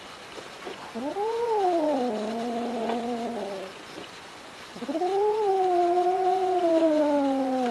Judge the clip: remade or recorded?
remade